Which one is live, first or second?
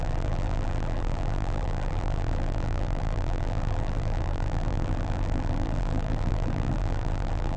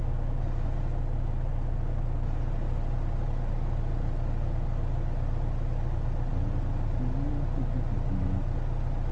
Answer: second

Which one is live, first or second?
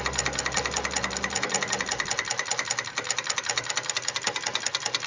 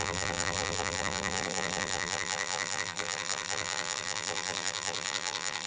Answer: first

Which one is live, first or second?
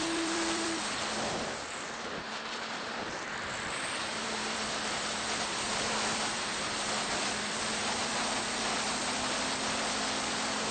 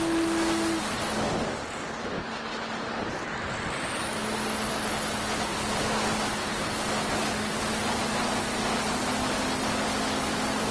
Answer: second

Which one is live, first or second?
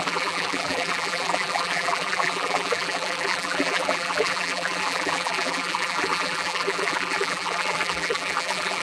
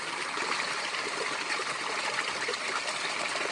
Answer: second